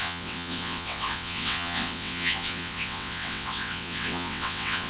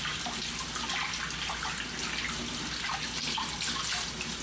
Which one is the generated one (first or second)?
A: first